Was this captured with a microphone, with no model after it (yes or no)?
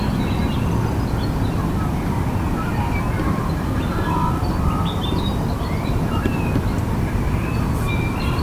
yes